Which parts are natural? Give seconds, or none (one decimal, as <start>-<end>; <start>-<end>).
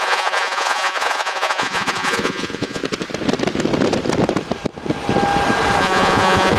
2.8-5.8